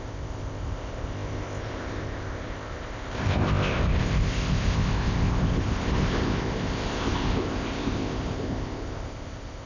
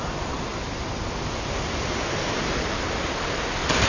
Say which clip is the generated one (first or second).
first